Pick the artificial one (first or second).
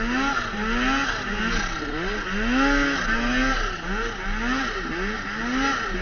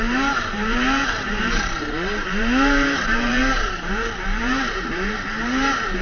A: second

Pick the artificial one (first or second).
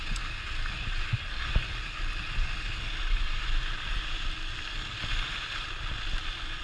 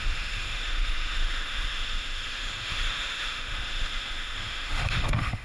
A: second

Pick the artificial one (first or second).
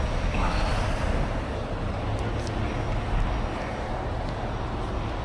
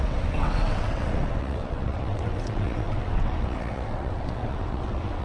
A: second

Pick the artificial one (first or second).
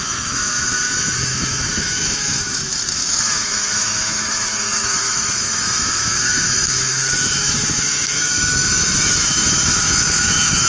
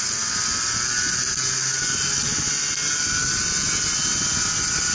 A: first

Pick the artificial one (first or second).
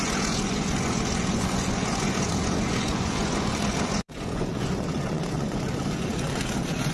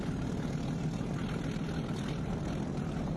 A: first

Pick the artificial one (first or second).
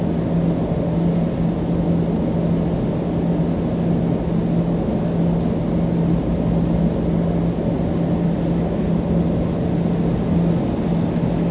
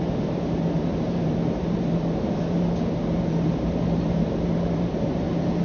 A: second